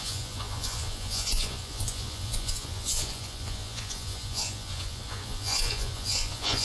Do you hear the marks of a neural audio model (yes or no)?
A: yes